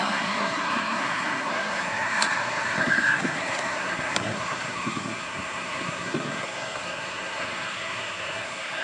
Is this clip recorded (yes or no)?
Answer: no